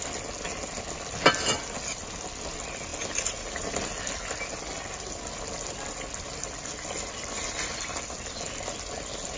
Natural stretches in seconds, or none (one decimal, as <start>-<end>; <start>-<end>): 0.0-9.4